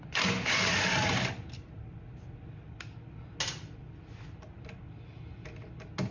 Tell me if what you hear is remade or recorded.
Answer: recorded